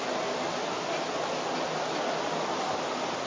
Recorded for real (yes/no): yes